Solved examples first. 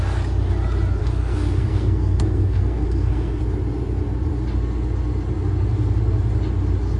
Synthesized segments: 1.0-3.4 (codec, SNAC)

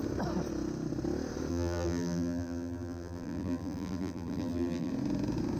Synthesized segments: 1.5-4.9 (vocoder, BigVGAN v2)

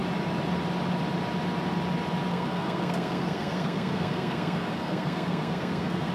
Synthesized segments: 2.3-6.1 (codec, SNAC)

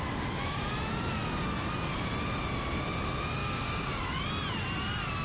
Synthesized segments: 3.4-4.0 (codec, DAC)

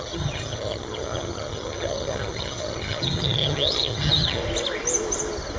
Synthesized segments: 0.0-4.4 (vocoder, HiFi-GAN)

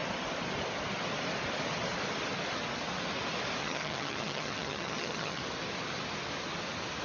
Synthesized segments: 3.6-5.4 (vocoder, HiFi-GAN)